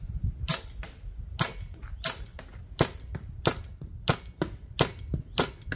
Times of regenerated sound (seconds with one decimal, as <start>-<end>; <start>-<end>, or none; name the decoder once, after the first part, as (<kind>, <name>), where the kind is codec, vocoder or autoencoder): 2.5-3.4 (vocoder, BigVGAN v2)